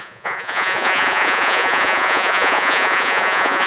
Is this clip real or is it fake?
fake